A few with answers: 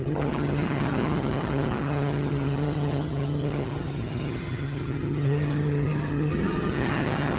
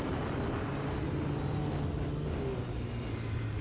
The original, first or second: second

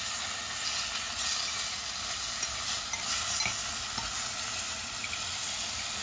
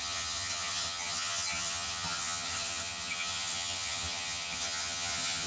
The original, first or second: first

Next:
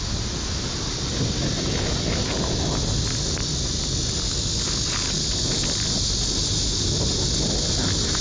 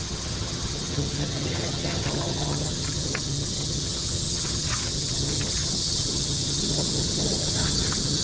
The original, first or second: first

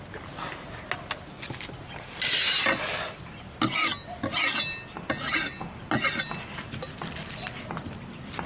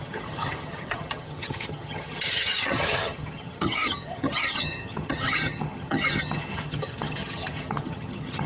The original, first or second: first